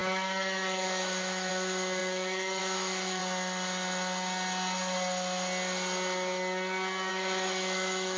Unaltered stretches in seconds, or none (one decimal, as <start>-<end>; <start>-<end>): 3.2-7.1